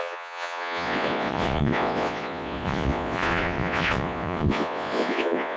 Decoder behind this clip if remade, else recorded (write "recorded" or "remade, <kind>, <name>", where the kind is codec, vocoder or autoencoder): remade, vocoder, Vocos